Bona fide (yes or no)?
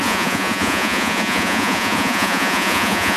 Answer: no